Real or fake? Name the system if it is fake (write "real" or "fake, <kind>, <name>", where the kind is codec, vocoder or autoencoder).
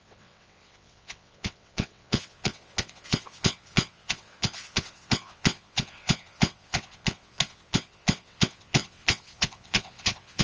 fake, vocoder, WaveNeXt